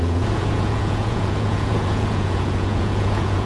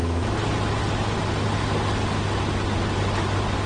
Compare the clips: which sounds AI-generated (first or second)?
first